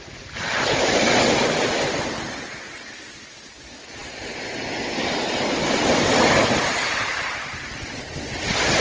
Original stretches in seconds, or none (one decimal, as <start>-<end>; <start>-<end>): 0.0-8.8